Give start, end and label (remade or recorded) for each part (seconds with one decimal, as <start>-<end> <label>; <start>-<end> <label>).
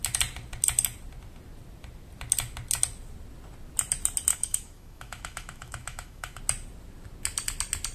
0.0-4.3 recorded; 4.3-6.4 remade; 6.4-7.9 recorded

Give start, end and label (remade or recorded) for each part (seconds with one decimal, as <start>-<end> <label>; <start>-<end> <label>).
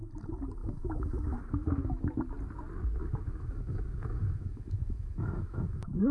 0.0-0.6 recorded; 0.6-2.1 remade; 2.1-3.0 recorded; 3.0-6.1 remade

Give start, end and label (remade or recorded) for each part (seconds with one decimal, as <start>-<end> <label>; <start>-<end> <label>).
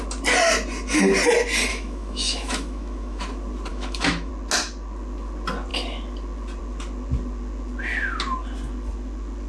0.0-1.7 recorded; 1.7-3.2 remade; 3.2-3.7 recorded; 3.7-4.3 remade; 4.3-9.5 recorded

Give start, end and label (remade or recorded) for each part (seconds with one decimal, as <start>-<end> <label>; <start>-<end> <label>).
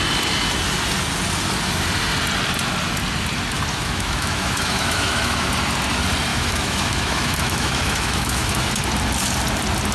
0.0-3.7 recorded; 3.7-5.5 remade; 5.5-6.3 recorded; 6.3-8.7 remade; 8.7-9.9 recorded